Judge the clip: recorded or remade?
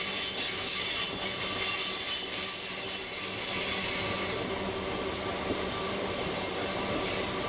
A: recorded